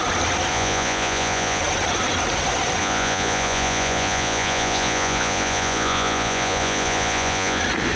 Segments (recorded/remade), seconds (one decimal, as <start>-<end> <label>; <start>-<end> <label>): 0.0-0.5 recorded; 0.5-1.6 remade; 1.6-2.8 recorded; 2.8-7.6 remade; 7.6-8.0 recorded